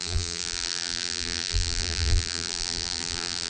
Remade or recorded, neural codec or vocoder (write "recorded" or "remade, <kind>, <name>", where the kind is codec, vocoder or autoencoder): remade, vocoder, BigVGAN v2